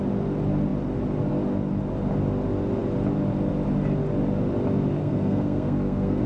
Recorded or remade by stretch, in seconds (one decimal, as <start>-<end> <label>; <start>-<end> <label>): 0.0-5.0 recorded; 5.0-6.3 remade